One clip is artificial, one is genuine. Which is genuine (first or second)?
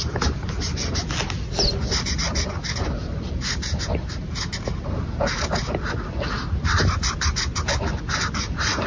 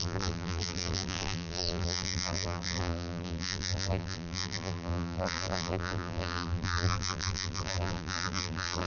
first